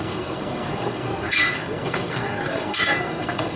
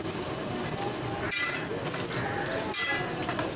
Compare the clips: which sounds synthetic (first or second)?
first